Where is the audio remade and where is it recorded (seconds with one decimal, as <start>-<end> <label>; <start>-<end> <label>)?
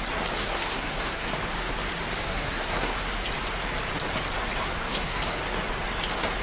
0.0-0.4 recorded; 0.4-1.3 remade; 1.3-2.2 recorded; 2.2-2.9 remade; 2.9-4.8 recorded; 4.8-5.4 remade; 5.4-6.4 recorded